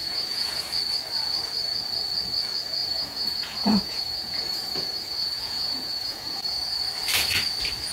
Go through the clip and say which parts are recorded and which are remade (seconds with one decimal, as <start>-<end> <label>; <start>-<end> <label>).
0.0-0.6 remade; 0.6-2.8 recorded; 2.8-6.8 remade; 6.8-7.9 recorded